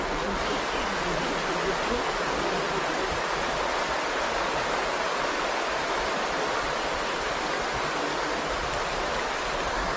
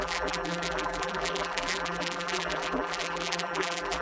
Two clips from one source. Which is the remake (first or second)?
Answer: second